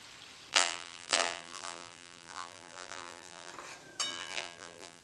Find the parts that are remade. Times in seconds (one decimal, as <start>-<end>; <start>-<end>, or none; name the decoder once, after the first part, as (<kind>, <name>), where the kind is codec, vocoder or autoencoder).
0.5-3.5 (vocoder, BigVGAN v2); 4.1-5.0